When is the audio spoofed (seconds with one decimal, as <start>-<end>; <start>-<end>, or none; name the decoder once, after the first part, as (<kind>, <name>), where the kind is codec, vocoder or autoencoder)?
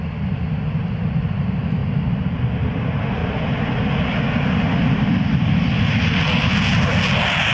none